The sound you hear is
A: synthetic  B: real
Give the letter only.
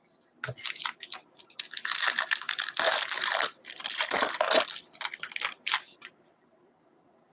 B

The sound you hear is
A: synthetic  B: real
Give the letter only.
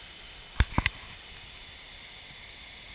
B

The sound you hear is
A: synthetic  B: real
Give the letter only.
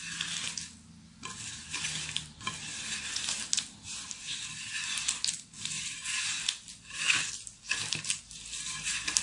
B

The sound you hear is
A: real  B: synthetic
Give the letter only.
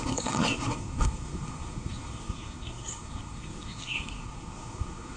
B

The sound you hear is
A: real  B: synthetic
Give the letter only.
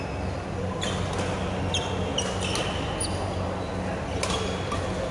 A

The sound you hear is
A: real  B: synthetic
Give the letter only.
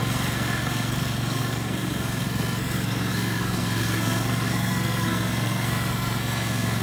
B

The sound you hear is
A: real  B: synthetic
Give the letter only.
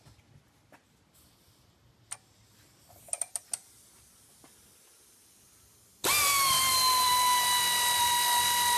A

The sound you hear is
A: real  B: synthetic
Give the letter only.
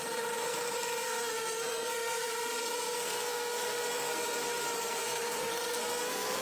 B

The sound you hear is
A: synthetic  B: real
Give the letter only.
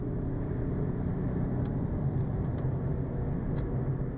B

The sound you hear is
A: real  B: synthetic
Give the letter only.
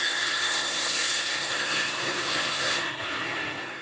B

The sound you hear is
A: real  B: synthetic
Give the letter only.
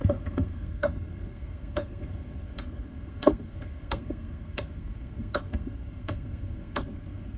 B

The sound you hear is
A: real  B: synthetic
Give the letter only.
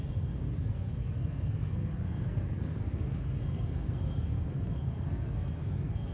B